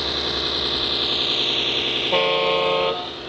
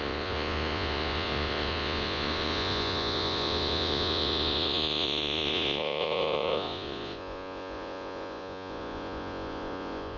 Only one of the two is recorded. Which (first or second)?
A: first